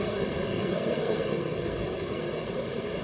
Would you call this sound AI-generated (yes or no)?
yes